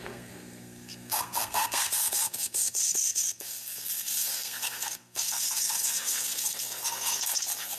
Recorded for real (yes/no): no